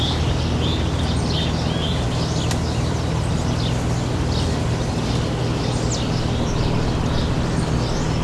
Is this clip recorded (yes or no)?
yes